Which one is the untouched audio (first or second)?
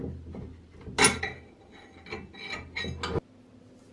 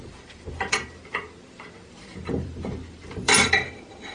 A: first